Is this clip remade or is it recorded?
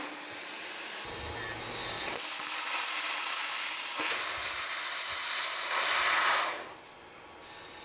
recorded